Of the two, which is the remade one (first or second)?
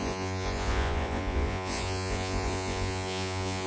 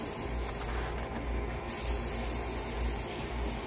first